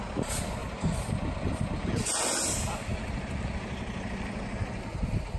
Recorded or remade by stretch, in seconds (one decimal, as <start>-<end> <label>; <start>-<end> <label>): 0.0-5.4 recorded